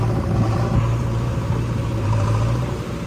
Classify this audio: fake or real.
fake